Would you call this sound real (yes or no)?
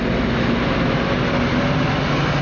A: yes